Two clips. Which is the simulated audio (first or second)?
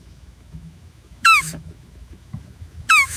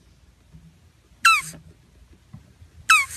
first